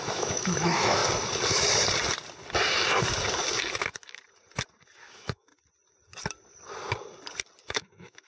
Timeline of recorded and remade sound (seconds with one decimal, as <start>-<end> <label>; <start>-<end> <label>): 0.0-1.0 remade; 1.0-5.0 recorded; 5.0-5.5 remade; 5.5-7.6 recorded; 7.6-8.3 remade